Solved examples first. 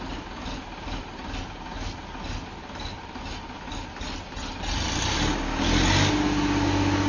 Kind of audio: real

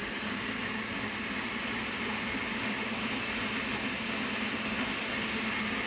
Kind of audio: real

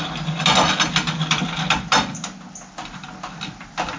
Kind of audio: real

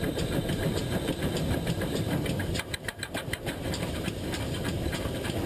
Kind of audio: fake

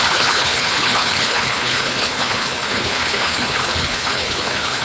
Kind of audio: fake